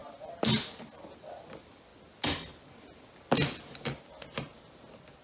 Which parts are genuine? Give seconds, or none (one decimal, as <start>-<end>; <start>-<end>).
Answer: 0.0-5.2